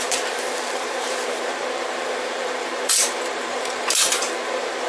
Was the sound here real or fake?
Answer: fake